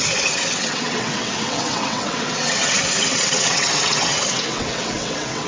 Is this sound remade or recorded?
remade